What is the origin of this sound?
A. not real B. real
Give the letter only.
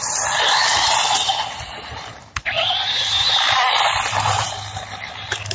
B